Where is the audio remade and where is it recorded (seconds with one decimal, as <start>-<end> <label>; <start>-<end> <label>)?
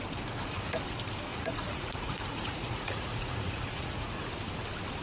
0.0-1.3 recorded; 1.3-4.3 remade; 4.3-5.0 recorded